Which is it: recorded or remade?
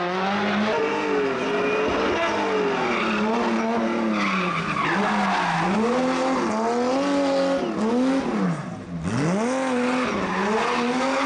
recorded